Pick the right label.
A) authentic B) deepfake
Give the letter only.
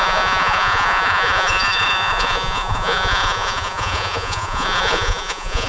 B